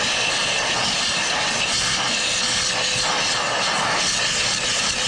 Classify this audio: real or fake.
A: real